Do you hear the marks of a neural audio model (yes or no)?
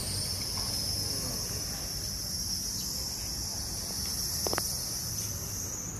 no